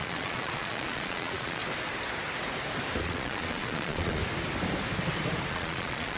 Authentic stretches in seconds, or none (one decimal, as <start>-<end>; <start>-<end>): 1.6-3.0; 4.2-5.5